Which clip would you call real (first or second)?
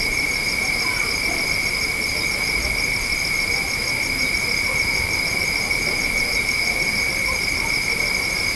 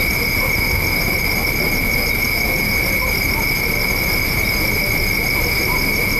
second